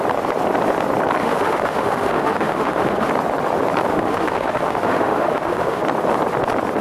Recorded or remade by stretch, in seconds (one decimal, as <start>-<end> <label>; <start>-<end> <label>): 0.0-1.2 recorded; 1.2-3.1 remade; 3.1-3.9 recorded; 3.9-5.8 remade; 5.8-6.8 recorded